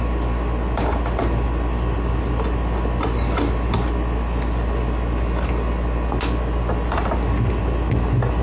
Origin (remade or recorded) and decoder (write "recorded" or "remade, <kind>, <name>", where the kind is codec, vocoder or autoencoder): recorded